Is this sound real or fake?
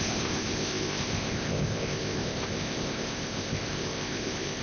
fake